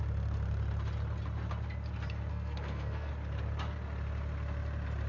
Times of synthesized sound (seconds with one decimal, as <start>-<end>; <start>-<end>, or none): 2.3-3.1